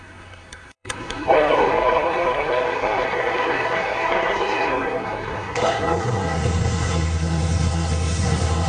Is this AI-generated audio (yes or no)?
yes